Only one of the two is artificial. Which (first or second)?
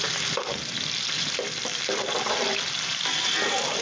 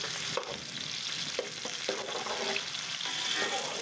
first